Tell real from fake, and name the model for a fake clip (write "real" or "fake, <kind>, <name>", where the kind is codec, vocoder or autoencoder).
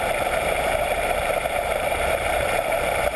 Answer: fake, vocoder, BigVGAN v2